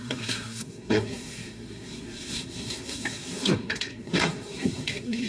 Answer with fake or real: fake